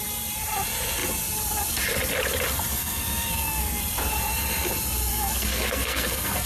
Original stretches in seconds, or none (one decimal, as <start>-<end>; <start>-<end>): 0.0-2.7; 3.8-5.1